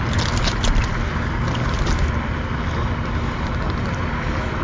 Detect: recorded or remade recorded